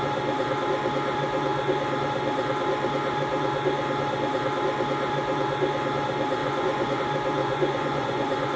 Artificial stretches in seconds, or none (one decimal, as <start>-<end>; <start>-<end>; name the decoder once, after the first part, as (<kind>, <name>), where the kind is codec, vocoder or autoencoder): 6.4-7.0 (vocoder, Vocos); 7.4-8.6